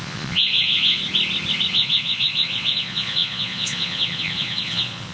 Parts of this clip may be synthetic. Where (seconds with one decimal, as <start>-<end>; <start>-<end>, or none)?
0.0-1.0; 1.7-5.1